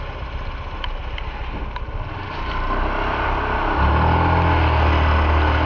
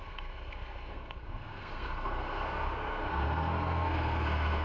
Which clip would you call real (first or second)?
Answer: first